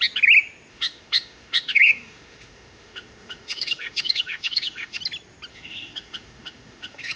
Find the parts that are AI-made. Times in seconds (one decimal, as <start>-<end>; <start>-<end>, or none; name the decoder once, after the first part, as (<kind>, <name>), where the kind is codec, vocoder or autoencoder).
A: 0.7-5.0 (autoencoder, DAC-VAE); 5.5-7.2